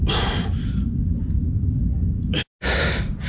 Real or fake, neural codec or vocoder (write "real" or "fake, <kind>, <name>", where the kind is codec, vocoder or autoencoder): real